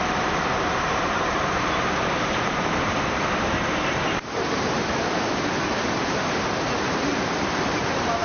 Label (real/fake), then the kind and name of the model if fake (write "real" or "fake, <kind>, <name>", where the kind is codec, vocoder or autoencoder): fake, vocoder, BigVGAN v2